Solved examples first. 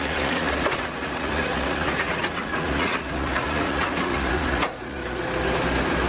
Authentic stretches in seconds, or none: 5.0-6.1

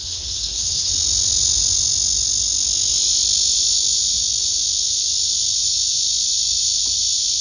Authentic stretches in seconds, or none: 0.9-7.4

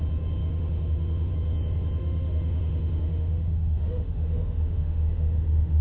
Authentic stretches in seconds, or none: 0.0-0.4; 1.3-2.0

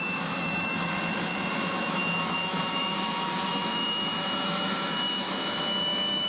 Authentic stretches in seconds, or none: none